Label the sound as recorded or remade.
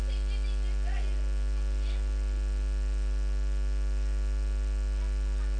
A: recorded